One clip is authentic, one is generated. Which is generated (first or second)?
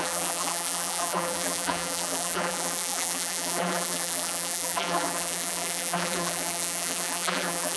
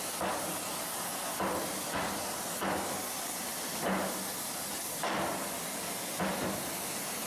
first